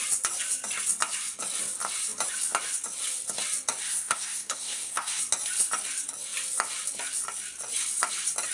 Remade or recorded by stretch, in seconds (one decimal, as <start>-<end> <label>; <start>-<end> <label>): 0.0-3.8 recorded; 3.8-5.2 remade; 5.2-8.5 recorded